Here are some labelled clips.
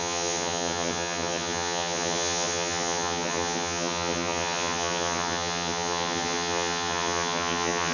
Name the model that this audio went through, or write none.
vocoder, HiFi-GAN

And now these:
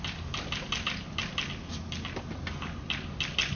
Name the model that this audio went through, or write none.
none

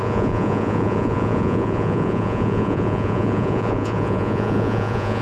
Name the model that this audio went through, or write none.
vocoder, Vocos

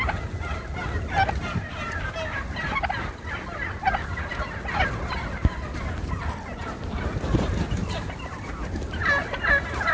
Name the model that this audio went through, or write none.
none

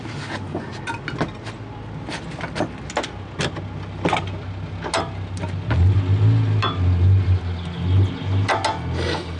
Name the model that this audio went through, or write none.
none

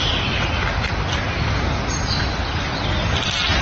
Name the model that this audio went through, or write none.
none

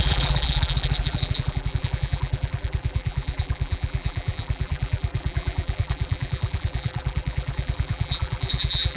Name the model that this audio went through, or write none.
vocoder, BigVGAN v2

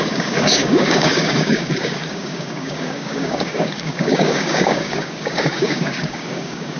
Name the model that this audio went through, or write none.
codec, DAC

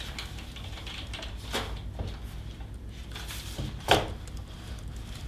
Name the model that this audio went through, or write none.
none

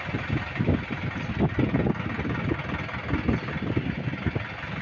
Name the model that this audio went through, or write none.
none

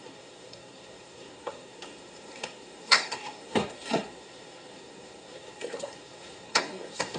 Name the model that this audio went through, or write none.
codec, SNAC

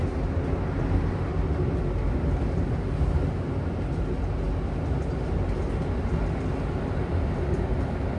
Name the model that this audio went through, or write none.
none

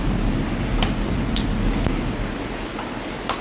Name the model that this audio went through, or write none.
none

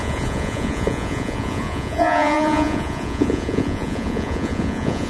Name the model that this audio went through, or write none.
vocoder, Vocos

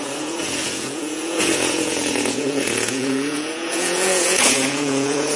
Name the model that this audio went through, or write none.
vocoder, Vocos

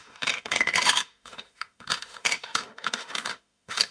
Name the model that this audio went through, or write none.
autoencoder, DAC-VAE